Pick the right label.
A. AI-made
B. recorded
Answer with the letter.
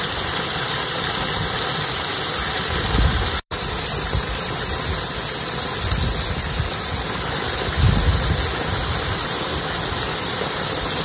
B